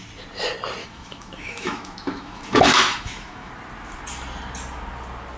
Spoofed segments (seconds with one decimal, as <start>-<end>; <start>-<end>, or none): 0.8-3.5